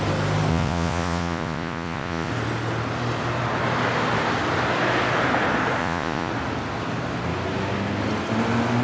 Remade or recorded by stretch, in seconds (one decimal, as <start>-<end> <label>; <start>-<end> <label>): 0.0-0.5 recorded; 0.5-2.3 remade; 2.3-5.8 recorded; 5.8-6.3 remade; 6.3-8.8 recorded